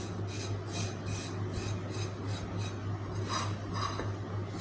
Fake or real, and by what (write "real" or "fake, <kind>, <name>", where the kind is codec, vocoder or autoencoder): real